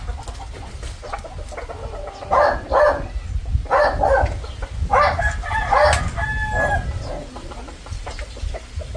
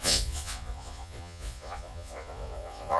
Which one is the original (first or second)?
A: first